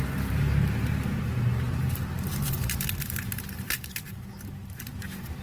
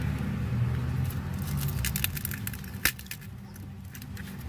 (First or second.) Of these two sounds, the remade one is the first